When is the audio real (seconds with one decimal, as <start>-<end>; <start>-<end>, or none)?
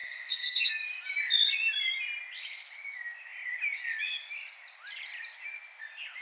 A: 0.7-6.2